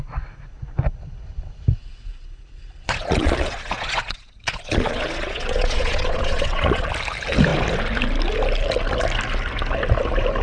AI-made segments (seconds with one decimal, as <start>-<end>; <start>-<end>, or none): 1.8-6.9